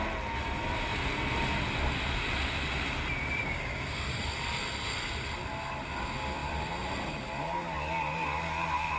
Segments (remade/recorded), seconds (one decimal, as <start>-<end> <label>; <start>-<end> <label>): 0.0-3.4 recorded; 3.4-4.2 remade; 4.2-9.0 recorded